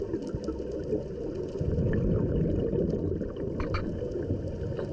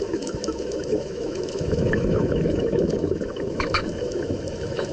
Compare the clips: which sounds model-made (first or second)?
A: second